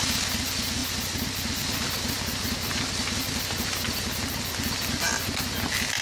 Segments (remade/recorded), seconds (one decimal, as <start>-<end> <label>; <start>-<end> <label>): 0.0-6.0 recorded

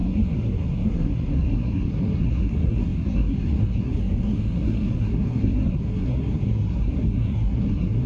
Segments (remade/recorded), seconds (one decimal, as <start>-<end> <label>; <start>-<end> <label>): 0.0-8.1 remade

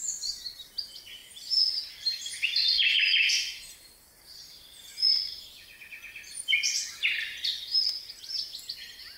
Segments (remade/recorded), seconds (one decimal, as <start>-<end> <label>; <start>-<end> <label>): 0.0-9.2 recorded

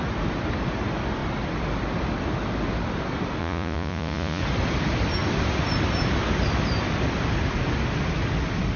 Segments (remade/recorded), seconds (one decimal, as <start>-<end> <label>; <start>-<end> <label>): 0.0-3.4 recorded; 3.4-4.4 remade; 4.4-8.8 recorded

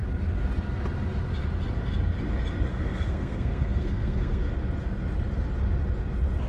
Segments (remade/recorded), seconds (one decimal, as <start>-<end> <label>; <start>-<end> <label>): 0.0-2.7 recorded; 2.7-4.5 remade; 4.5-6.5 recorded

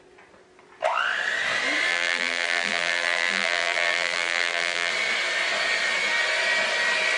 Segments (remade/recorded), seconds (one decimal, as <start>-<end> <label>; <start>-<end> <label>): 0.0-1.9 recorded; 1.9-4.9 remade; 4.9-7.2 recorded

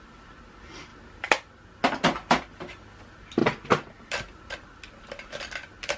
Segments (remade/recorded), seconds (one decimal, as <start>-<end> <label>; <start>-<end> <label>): 0.0-6.0 recorded